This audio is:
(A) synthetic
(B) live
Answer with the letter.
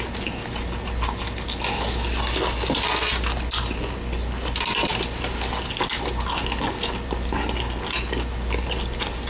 B